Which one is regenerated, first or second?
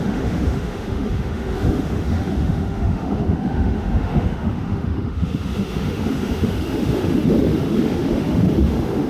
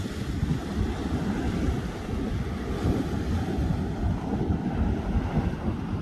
first